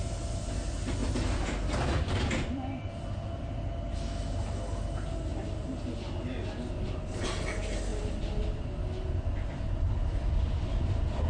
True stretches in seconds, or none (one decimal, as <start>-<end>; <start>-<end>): 0.0-11.3